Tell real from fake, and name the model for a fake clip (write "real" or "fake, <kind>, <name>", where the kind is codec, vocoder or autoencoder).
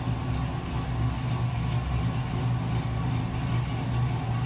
real